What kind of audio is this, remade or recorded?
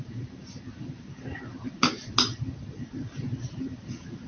recorded